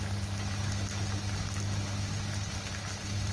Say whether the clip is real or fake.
real